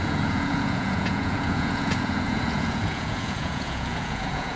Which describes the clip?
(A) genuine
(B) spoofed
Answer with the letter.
B